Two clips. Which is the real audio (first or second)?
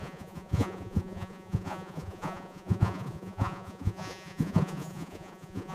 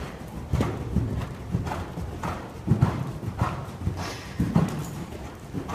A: second